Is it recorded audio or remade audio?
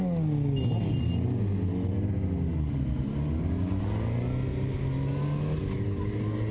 recorded